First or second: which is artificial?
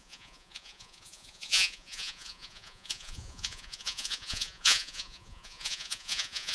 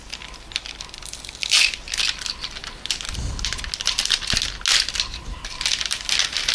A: first